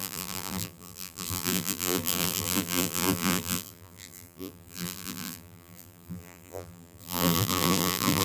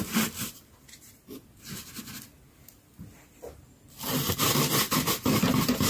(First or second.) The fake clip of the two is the first